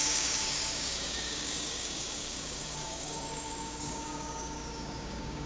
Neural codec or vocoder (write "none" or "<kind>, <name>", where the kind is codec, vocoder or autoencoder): codec, DAC